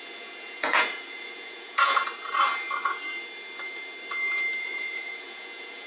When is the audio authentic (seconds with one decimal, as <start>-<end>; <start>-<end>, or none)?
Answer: 2.0-4.6